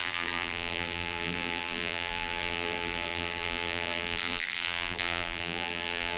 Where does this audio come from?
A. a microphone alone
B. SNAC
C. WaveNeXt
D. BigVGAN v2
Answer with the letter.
D